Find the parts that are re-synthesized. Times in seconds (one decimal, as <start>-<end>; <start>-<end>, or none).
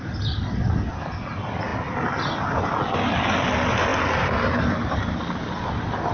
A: none